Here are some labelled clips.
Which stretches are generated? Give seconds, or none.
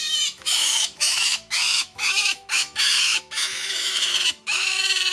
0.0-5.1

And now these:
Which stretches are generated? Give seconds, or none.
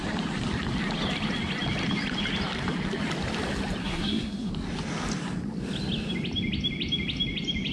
3.8-4.5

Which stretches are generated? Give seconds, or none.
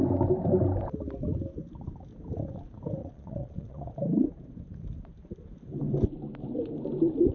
3.0-3.9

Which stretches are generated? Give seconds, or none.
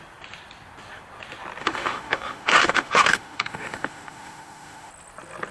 1.6-4.9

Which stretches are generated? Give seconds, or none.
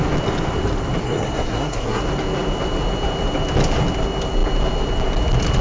1.0-2.0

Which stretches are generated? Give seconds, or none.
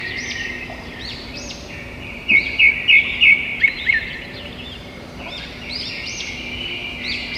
0.0-2.6; 3.5-6.3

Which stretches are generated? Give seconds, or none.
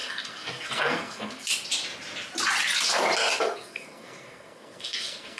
0.0-1.5; 3.4-5.4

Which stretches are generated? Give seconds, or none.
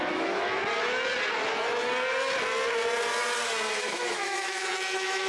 0.0-0.6; 3.8-5.3